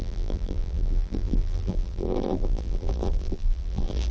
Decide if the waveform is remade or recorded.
remade